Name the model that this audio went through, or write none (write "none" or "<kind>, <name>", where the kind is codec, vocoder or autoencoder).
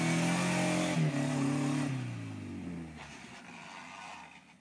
none